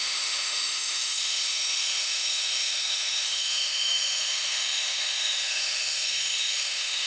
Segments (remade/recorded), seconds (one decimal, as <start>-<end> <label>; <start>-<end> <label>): 0.0-7.1 remade